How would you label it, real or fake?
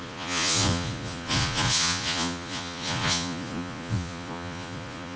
fake